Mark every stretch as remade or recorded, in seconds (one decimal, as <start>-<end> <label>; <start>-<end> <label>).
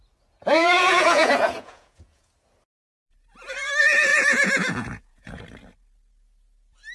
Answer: 0.0-0.4 recorded; 0.4-2.3 remade; 2.3-4.1 recorded; 4.1-5.4 remade; 5.4-6.9 recorded